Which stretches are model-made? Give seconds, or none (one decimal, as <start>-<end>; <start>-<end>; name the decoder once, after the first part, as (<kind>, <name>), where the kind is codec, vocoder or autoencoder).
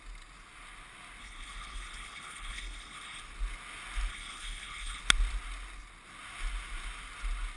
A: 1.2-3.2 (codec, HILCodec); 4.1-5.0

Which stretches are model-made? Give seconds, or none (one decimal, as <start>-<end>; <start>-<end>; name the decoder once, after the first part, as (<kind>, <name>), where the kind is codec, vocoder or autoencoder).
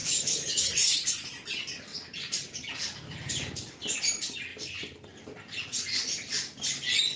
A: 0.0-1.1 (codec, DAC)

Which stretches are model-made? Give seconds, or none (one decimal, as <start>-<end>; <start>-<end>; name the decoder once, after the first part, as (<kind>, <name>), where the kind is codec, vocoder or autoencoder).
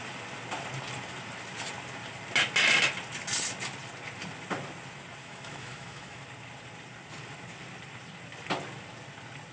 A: 5.2-6.2 (autoencoder, DAC-VAE)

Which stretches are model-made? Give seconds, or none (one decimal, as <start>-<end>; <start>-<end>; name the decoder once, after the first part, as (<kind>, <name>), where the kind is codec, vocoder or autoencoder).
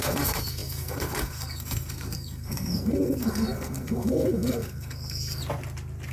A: 0.0-5.4 (codec, SNAC)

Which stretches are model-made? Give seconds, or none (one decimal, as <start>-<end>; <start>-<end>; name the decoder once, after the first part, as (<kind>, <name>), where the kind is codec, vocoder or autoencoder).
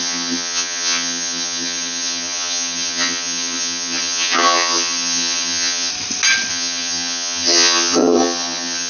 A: 0.0-5.9 (vocoder, HiFi-GAN); 6.5-8.9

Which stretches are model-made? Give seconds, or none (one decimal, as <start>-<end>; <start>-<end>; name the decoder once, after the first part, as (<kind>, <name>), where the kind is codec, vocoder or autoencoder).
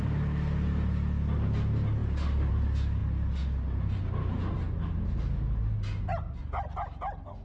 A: none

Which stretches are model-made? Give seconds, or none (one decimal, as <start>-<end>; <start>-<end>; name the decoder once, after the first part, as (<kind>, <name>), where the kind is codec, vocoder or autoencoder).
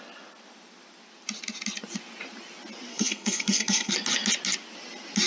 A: 2.9-3.9 (codec, SNAC)